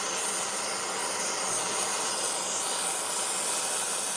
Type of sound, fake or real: real